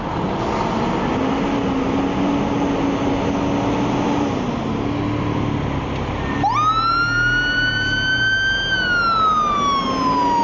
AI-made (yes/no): no